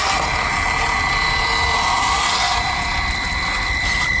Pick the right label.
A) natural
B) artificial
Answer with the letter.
A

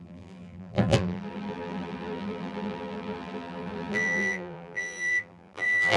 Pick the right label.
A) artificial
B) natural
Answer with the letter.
A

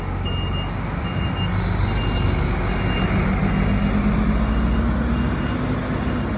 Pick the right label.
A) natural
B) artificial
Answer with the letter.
A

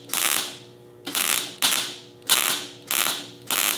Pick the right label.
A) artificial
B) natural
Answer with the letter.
B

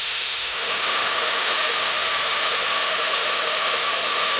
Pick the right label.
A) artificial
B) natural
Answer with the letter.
A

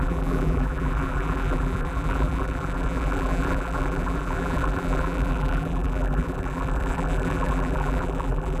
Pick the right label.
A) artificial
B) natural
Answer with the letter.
A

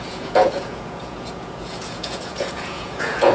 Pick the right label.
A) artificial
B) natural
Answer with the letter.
A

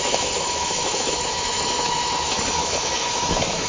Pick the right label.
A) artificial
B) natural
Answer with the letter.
A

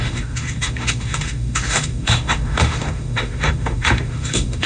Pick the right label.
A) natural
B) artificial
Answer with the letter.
B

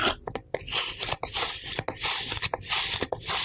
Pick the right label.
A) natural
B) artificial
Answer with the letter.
A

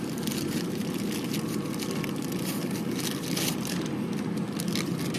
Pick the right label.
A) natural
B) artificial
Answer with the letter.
A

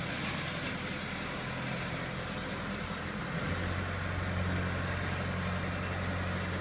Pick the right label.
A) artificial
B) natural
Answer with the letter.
B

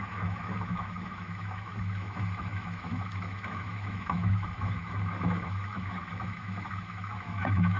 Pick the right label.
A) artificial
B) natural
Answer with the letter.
A